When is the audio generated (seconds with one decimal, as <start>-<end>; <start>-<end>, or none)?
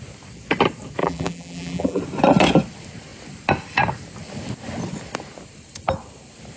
1.0-2.0